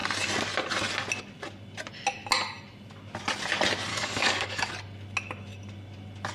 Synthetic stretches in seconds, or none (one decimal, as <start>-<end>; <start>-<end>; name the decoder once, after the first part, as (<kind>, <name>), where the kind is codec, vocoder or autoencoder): 3.9-4.7 (codec, DAC)